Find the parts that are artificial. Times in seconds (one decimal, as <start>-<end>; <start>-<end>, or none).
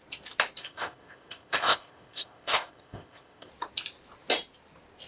0.6-3.5